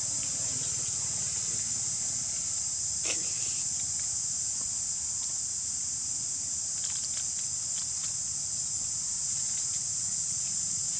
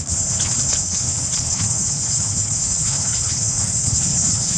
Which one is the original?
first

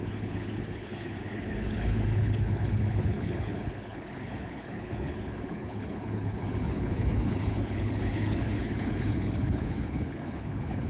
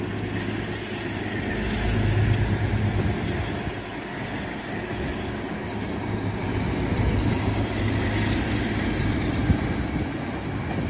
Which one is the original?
second